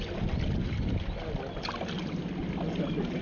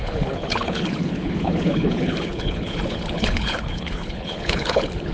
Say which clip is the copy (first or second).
second